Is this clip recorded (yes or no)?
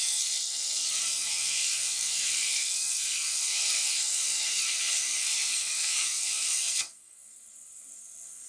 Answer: no